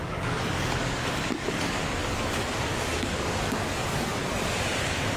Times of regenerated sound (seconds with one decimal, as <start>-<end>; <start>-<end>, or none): 0.0-4.2; 4.8-5.2